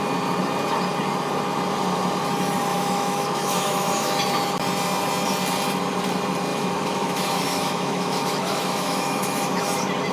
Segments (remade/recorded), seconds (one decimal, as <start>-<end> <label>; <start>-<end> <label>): 0.0-2.7 recorded; 2.7-4.2 remade; 4.2-6.5 recorded; 6.5-9.6 remade; 9.6-10.1 recorded